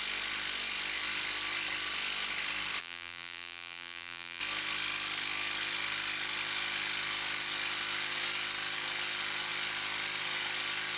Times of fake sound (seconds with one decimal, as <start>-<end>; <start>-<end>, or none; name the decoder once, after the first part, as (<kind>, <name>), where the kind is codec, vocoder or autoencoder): 2.8-4.4 (vocoder, BigVGAN v2)